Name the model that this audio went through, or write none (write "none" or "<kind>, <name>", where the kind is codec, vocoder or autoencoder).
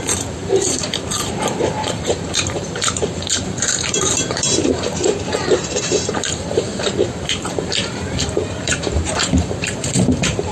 vocoder, BigVGAN v2